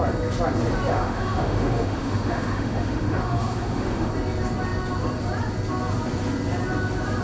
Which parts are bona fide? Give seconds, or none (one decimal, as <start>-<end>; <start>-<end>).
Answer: 0.0-0.9; 4.1-7.2